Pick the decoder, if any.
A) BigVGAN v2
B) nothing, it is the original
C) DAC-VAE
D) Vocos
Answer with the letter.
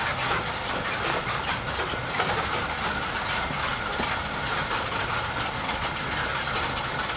B